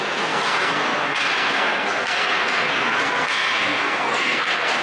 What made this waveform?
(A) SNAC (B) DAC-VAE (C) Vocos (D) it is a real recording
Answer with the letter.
A